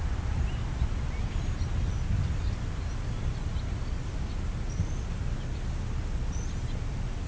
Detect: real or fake real